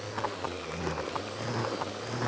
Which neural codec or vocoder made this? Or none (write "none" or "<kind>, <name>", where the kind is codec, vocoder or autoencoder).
none